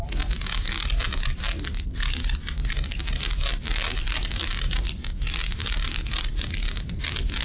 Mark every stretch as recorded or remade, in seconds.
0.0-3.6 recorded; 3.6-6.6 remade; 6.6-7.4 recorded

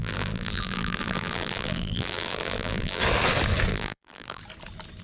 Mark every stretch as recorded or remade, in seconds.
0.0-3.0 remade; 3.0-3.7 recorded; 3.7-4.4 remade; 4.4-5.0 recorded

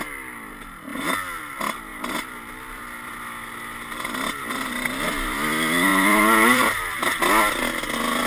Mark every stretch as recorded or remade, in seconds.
0.0-1.9 recorded; 1.9-3.1 remade; 3.1-5.9 recorded; 5.9-7.1 remade; 7.1-8.3 recorded

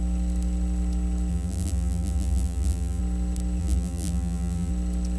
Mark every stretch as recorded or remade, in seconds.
0.0-1.3 recorded; 1.3-3.0 remade; 3.0-3.6 recorded; 3.6-4.7 remade; 4.7-5.2 recorded

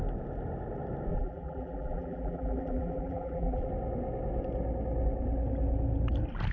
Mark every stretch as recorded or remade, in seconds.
0.0-1.1 recorded; 1.1-3.7 remade; 3.7-6.5 recorded